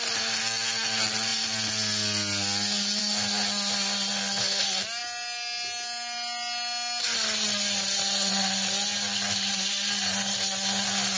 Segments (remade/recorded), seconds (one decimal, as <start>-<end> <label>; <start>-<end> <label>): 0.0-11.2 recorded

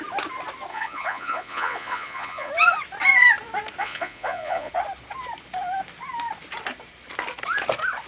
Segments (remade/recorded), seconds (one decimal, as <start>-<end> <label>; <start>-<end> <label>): 0.0-0.7 recorded; 0.7-2.5 remade; 2.5-3.8 recorded; 3.8-4.7 remade; 4.7-8.1 recorded

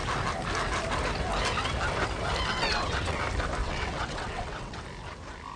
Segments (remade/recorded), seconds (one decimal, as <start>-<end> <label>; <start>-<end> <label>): 0.0-2.5 recorded; 2.5-3.2 remade; 3.2-3.6 recorded; 3.6-4.8 remade; 4.8-5.6 recorded